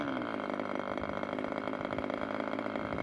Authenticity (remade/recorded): recorded